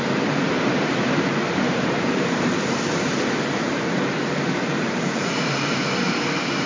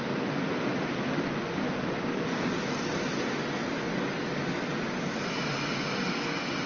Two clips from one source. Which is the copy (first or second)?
first